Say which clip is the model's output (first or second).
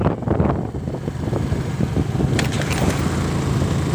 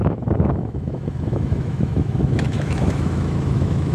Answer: second